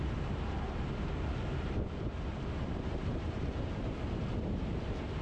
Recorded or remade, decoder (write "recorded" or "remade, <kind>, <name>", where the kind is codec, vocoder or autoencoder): remade, vocoder, BigVGAN v2